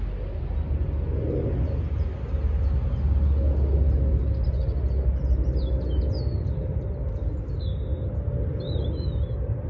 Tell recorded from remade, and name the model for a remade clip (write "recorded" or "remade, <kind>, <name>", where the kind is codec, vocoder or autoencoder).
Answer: recorded